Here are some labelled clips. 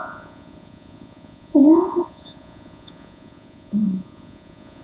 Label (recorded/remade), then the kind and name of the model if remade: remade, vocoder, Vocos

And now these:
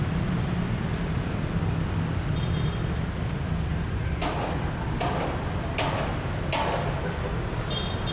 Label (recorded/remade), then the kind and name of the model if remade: recorded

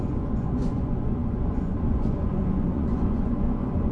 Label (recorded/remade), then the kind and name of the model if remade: remade, vocoder, Vocos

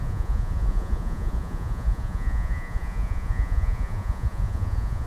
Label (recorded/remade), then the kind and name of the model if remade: remade, vocoder, Vocos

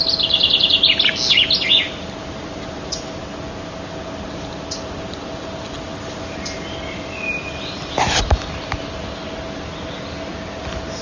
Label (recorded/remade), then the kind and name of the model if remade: recorded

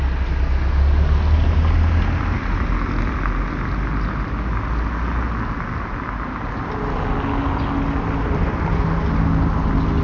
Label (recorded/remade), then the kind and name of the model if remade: recorded